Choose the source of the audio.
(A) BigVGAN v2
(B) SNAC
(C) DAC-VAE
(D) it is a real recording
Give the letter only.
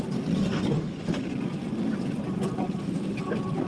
D